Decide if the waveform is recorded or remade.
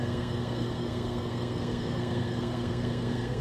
remade